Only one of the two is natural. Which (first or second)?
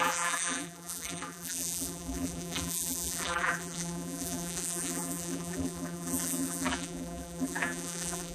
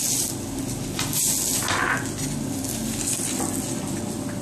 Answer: second